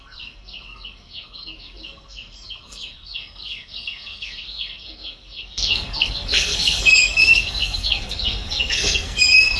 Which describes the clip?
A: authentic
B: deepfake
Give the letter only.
B